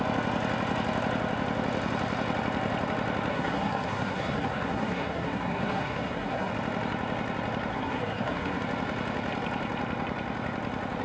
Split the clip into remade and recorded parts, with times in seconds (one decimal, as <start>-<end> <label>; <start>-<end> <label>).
0.0-3.3 recorded; 3.3-6.5 remade; 6.5-7.7 recorded; 7.7-8.6 remade; 8.6-11.0 recorded